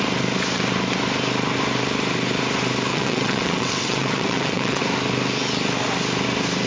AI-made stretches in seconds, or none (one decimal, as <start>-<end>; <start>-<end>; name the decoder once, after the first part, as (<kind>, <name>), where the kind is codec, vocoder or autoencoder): 2.9-4.8 (vocoder, WaveNeXt)